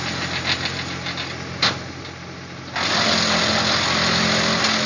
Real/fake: real